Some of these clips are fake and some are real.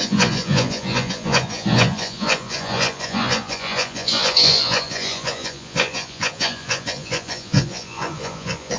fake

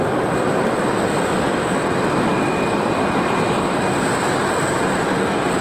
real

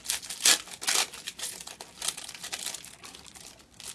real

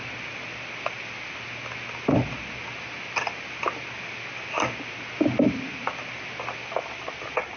real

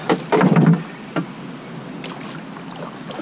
real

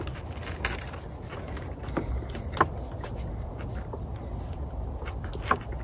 real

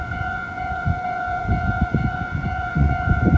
fake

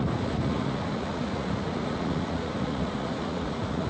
fake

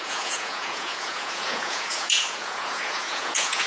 fake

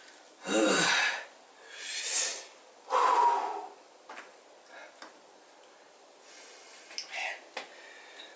real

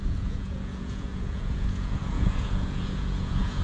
fake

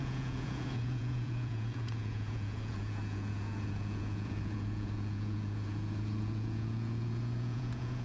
fake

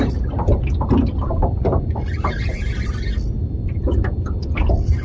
real